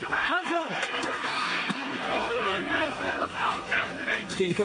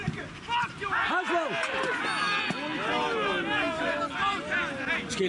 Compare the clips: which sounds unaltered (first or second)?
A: second